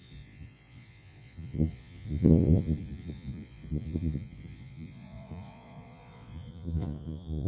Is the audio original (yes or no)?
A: no